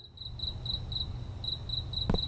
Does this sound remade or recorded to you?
recorded